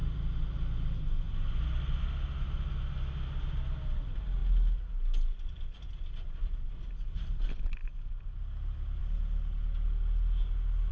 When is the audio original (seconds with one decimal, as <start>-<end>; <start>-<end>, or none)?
0.0-10.9